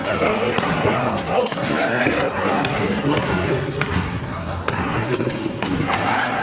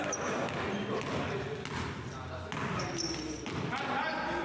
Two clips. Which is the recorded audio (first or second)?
second